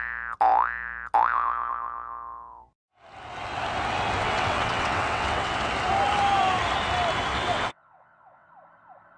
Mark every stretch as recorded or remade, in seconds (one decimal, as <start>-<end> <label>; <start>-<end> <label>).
0.0-4.2 recorded; 4.2-5.7 remade; 5.7-7.3 recorded; 7.3-8.5 remade; 8.5-9.2 recorded